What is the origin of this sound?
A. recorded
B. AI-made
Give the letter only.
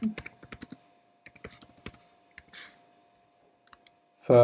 A